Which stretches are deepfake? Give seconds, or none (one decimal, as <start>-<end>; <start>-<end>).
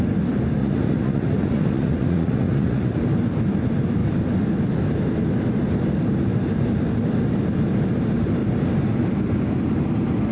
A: 0.6-3.0